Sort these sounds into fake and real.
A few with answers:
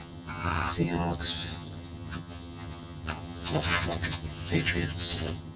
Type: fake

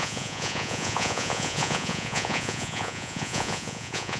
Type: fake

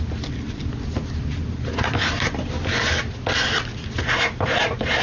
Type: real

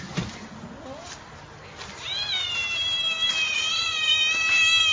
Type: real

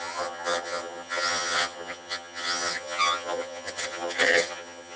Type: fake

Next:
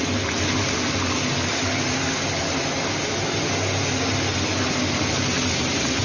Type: real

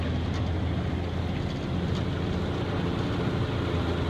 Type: real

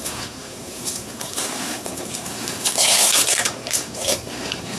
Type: fake